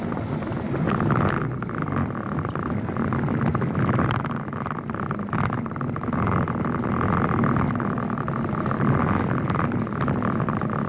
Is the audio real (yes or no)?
yes